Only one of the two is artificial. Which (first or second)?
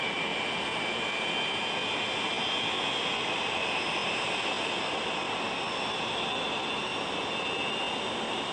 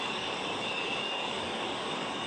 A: second